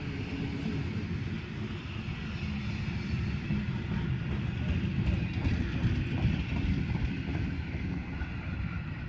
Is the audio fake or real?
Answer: real